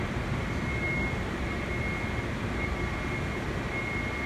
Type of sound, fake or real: real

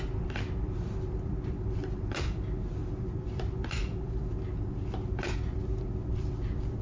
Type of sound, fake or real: fake